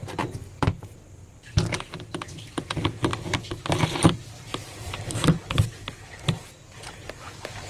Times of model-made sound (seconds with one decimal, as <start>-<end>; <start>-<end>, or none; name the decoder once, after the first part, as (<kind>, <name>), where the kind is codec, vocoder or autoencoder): 1.2-1.7 (vocoder, BigVGAN v2)